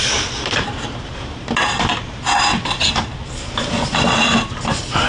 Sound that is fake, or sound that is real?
real